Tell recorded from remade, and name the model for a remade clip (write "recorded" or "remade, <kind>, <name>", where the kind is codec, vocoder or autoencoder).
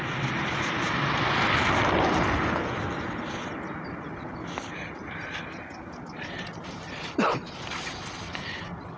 recorded